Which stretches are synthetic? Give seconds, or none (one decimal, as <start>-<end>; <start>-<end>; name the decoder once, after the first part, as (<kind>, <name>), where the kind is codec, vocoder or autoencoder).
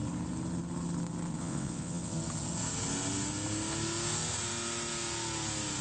1.4-2.1 (vocoder, WaveNeXt)